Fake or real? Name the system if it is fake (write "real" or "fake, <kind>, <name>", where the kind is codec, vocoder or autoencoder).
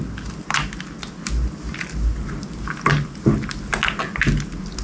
real